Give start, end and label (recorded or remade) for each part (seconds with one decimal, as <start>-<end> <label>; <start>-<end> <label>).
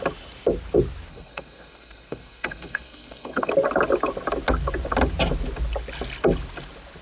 0.0-1.1 recorded; 1.1-3.5 remade; 3.5-7.0 recorded